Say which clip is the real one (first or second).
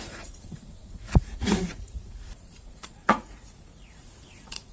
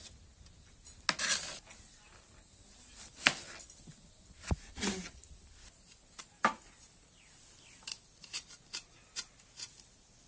second